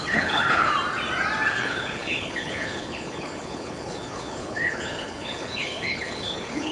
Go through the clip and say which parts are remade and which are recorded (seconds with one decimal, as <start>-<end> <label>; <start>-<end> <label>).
0.0-0.7 remade; 0.7-1.5 recorded; 1.5-6.7 remade